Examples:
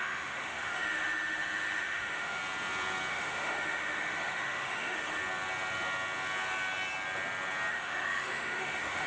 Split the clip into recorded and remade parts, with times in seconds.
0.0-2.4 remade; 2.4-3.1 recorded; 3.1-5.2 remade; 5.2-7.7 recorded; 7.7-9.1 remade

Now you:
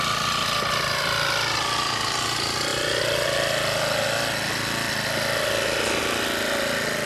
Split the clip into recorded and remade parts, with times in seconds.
0.0-7.1 recorded

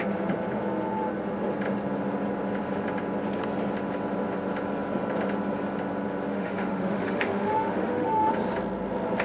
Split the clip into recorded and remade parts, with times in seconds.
0.0-6.3 recorded; 6.3-8.3 remade; 8.3-9.2 recorded

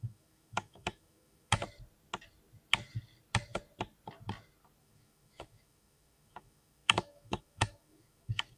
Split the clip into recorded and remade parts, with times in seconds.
0.0-1.6 remade; 1.6-4.8 recorded; 4.8-8.6 remade

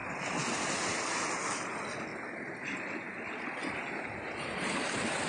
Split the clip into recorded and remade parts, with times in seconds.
0.0-5.3 recorded

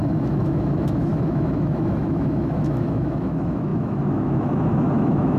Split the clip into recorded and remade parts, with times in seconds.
0.0-5.4 remade